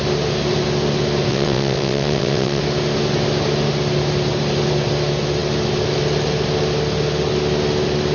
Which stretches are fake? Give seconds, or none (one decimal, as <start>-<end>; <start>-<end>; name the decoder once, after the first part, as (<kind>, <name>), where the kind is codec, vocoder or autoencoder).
1.3-2.6 (vocoder, WaveNeXt)